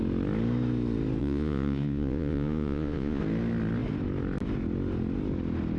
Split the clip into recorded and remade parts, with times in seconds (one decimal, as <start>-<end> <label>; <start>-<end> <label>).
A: 0.0-1.2 recorded; 1.2-3.2 remade; 3.2-5.8 recorded